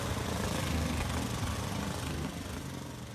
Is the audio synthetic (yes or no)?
no